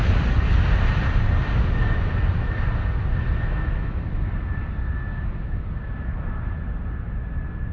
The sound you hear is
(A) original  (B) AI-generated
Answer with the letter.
A